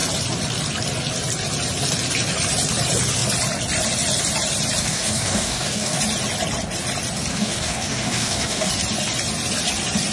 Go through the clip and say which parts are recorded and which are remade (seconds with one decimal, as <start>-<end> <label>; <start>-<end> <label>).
0.0-4.8 recorded; 4.8-6.0 remade; 6.0-7.3 recorded; 7.3-8.7 remade; 8.7-10.1 recorded